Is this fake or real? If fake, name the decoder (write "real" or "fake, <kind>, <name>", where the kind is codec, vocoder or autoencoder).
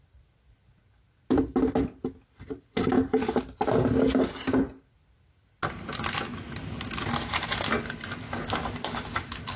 real